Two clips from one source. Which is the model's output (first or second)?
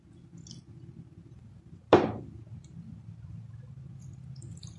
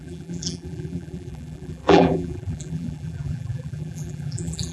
second